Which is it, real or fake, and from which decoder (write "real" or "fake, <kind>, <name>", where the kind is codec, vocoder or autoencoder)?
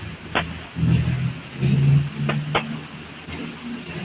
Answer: real